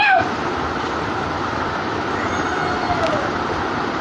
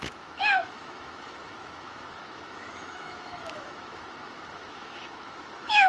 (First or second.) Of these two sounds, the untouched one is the first